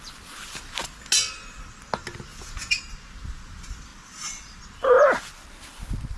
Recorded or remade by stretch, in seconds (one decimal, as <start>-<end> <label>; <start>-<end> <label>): 0.0-2.3 recorded; 2.3-2.8 remade; 2.8-6.2 recorded